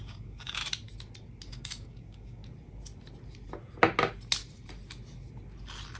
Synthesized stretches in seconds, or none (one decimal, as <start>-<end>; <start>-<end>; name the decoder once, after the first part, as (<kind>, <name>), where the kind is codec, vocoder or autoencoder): 0.0-0.6 (codec, DAC); 1.5-2.4